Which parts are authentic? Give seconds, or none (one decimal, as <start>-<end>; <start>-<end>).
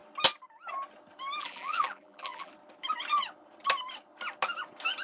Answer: 0.0-1.4; 2.5-5.0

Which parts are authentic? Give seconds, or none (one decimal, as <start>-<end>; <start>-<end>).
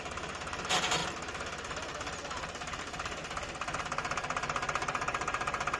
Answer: 1.0-2.8; 3.2-3.8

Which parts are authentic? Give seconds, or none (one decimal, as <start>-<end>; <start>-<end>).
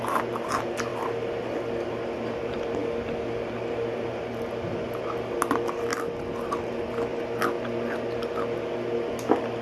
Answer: 0.0-9.6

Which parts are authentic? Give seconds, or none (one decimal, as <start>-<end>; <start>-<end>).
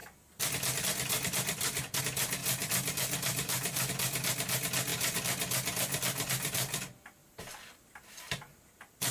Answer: 0.0-2.4; 3.9-7.2; 8.6-9.1